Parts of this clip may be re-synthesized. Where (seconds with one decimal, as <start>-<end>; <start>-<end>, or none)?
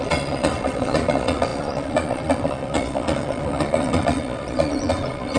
0.0-5.4